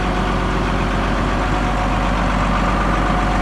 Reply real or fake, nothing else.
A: real